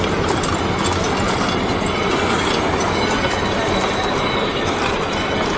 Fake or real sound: real